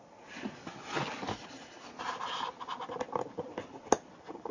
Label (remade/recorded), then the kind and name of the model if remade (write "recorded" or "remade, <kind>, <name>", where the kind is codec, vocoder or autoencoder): recorded